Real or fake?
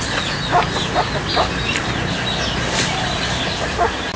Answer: real